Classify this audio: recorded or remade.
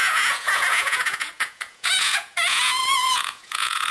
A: remade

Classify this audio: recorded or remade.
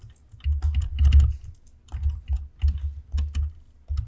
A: recorded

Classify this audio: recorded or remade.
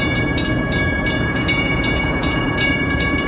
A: remade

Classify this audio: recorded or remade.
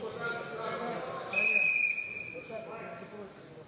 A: recorded